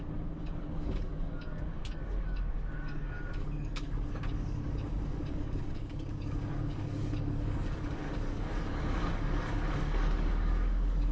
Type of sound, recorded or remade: remade